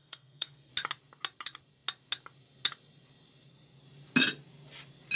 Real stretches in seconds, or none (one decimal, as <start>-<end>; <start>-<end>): 0.7-5.2